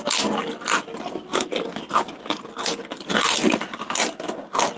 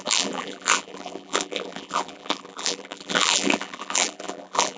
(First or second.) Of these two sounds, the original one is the first